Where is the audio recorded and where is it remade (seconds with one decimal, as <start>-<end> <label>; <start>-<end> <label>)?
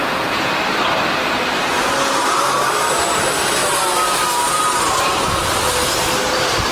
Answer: 0.0-0.5 remade; 0.5-6.7 recorded